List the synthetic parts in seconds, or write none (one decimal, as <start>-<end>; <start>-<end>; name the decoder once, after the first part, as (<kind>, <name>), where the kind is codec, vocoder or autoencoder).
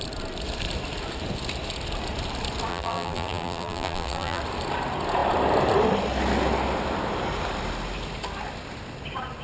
2.7-4.4 (vocoder, BigVGAN v2)